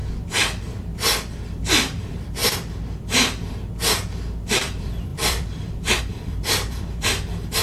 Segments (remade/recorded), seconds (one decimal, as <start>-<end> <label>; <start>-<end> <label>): 0.0-1.5 recorded; 1.5-2.4 remade; 2.4-4.5 recorded; 4.5-7.6 remade